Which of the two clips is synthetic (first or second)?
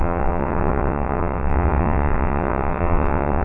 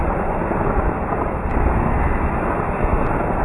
first